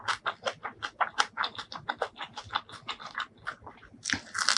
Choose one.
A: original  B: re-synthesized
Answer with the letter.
A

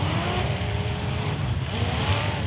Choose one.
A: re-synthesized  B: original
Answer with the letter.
A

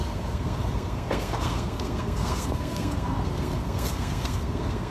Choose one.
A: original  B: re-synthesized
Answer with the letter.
B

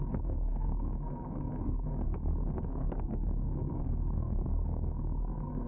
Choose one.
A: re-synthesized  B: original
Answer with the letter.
A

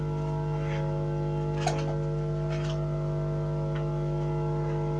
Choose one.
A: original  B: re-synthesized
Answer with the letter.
A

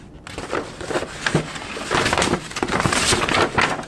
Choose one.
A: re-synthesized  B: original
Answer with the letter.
B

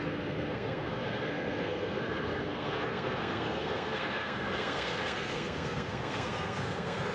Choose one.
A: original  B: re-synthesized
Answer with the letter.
B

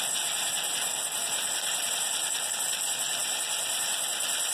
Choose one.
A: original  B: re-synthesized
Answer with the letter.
A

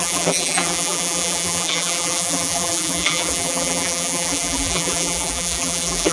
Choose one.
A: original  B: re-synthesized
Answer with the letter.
B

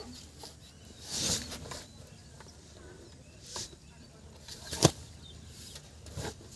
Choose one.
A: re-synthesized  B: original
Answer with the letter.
B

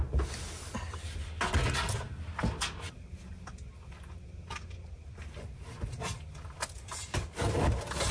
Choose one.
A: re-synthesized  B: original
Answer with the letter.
B